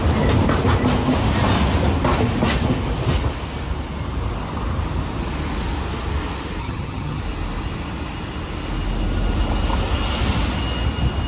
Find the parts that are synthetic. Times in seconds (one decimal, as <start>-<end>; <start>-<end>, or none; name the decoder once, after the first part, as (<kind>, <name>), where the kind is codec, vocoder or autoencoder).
6.6-7.2 (vocoder, HiFi-GAN)

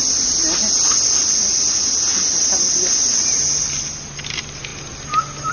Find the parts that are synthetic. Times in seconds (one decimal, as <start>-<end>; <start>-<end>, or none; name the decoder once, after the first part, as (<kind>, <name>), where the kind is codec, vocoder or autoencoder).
none

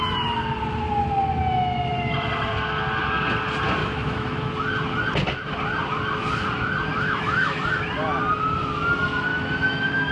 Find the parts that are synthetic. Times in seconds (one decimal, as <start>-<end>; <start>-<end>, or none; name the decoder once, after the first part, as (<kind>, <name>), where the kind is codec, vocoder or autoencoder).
3.8-4.5 (autoencoder, DAC-VAE); 6.9-7.6; 9.3-10.1

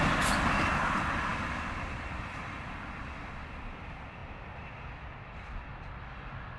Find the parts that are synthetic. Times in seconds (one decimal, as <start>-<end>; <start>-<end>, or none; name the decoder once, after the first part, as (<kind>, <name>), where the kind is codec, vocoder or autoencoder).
none